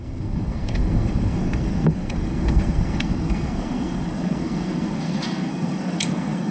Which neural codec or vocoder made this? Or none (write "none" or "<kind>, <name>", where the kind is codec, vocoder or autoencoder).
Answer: codec, SNAC